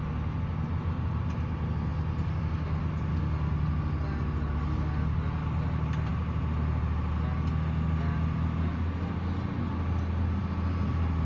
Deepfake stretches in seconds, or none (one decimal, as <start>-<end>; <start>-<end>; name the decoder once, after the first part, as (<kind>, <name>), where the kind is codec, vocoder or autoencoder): none